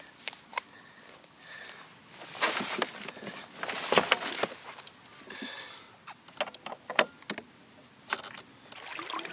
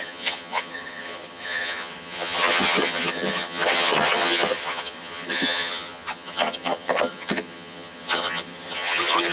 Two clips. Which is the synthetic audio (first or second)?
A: second